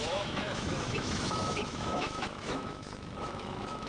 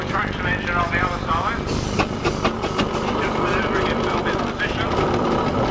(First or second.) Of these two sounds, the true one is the second